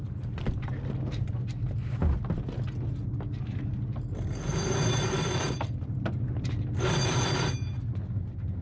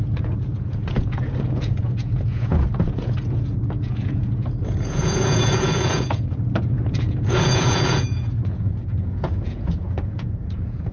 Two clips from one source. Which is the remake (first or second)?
second